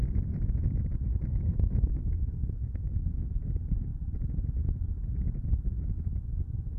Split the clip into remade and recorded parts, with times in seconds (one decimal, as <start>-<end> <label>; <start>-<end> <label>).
0.0-1.3 recorded; 1.3-3.3 remade; 3.3-6.8 recorded